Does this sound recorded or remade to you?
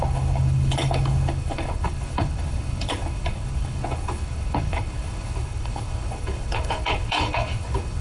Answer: remade